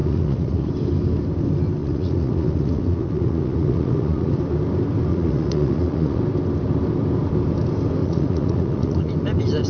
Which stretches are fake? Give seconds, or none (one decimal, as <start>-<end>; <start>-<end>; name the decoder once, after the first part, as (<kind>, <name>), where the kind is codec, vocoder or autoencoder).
0.0-0.7 (vocoder, Vocos); 1.8-4.4; 5.1-6.2; 8.0-9.1